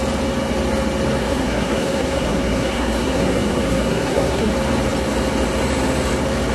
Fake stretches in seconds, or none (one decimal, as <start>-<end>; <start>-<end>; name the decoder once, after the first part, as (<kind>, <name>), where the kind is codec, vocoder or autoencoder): 1.2-4.5 (codec, SNAC)